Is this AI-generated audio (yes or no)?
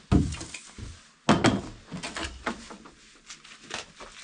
no